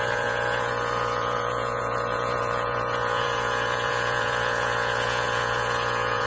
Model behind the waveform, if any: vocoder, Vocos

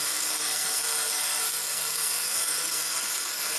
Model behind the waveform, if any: codec, SNAC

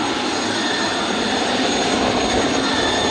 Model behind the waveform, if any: none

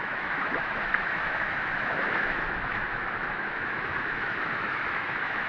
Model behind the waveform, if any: autoencoder, DAC-VAE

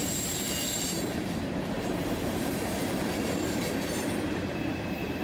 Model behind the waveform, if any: vocoder, BigVGAN v2